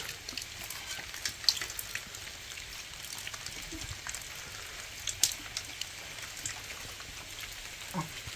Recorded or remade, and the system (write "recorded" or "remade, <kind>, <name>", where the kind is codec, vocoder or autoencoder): recorded